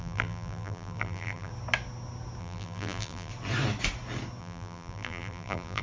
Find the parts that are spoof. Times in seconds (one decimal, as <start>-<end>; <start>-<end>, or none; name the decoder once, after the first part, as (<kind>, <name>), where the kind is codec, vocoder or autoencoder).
0.0-1.5 (vocoder, BigVGAN v2); 2.4-3.3; 4.4-5.8